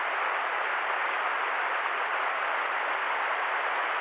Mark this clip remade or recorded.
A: recorded